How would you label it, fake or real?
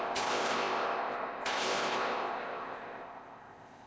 fake